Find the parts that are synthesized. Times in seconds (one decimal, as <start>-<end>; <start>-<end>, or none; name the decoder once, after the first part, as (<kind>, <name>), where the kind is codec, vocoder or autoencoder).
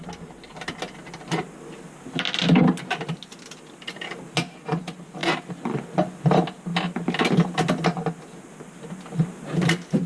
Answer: none